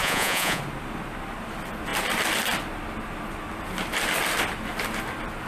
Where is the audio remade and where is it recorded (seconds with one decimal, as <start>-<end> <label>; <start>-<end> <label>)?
0.0-0.6 remade; 0.6-5.5 recorded